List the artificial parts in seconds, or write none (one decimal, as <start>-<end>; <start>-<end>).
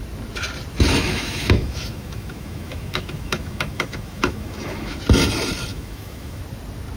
1.0-5.0; 5.7-6.4